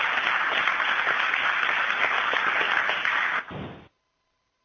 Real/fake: real